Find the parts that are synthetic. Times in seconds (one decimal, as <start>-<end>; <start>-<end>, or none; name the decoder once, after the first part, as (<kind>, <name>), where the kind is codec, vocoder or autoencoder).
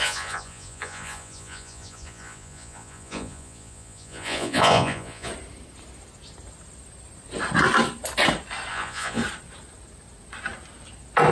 0.0-5.3 (vocoder, Vocos); 8.7-9.2